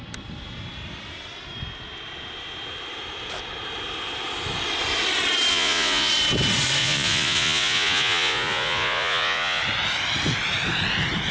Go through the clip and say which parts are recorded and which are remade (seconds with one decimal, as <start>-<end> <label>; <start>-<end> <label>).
0.0-5.5 recorded; 5.5-6.1 remade; 6.1-6.8 recorded; 6.8-9.6 remade; 9.6-11.3 recorded

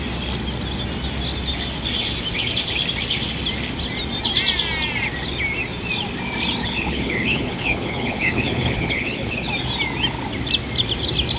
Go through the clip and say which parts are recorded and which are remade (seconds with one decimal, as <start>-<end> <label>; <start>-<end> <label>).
0.0-6.6 recorded; 6.6-9.5 remade; 9.5-11.4 recorded

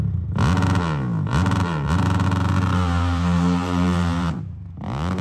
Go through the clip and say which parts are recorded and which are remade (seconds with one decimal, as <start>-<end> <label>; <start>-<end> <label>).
0.0-1.3 recorded; 1.3-4.4 remade; 4.4-5.2 recorded

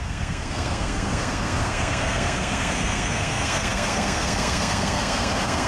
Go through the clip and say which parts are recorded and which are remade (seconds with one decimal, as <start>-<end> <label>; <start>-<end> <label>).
0.0-5.7 remade

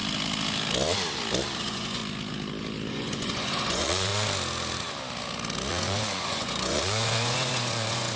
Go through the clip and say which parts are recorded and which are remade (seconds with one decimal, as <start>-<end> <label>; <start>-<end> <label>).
0.0-1.6 recorded; 1.6-2.0 remade; 2.0-2.9 recorded; 2.9-4.1 remade; 4.1-5.7 recorded; 5.7-8.2 remade

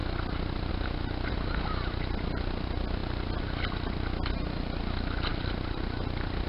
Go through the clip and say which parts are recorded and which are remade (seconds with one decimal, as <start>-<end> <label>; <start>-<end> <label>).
0.0-5.3 recorded; 5.3-5.8 remade; 5.8-6.5 recorded

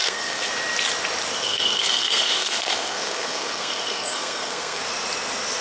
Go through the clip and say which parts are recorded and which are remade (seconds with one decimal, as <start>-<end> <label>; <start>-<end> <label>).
0.0-0.5 remade; 0.5-1.4 recorded; 1.4-4.8 remade; 4.8-5.6 recorded

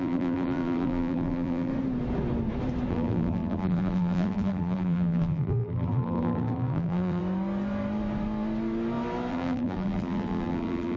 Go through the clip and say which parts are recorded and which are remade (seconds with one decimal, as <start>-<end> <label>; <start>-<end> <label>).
0.0-1.7 remade; 1.7-2.9 recorded; 2.9-7.2 remade; 7.2-9.3 recorded; 9.3-11.0 remade